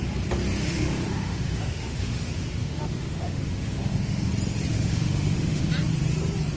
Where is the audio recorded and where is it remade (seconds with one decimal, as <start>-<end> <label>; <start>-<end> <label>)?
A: 0.0-0.6 recorded; 0.6-4.3 remade; 4.3-4.7 recorded; 4.7-5.7 remade; 5.7-6.6 recorded